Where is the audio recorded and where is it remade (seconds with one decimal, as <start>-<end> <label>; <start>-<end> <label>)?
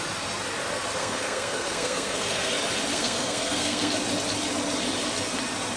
0.0-1.0 recorded; 1.0-2.5 remade; 2.5-2.9 recorded; 2.9-3.9 remade; 3.9-5.8 recorded